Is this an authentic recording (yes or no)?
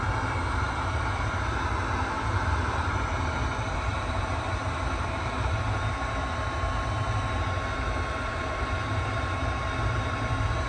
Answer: no